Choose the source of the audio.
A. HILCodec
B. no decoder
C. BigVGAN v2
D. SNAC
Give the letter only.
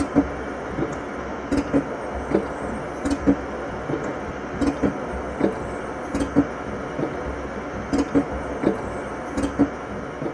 B